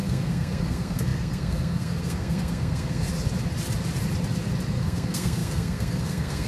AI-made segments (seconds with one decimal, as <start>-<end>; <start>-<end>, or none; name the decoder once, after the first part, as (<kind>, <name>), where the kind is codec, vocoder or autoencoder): 0.0-3.1 (codec, SNAC); 4.7-6.5